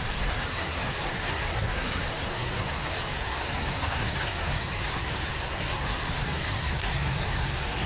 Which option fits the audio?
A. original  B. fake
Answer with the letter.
B